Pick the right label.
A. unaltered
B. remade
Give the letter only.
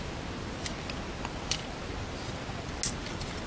A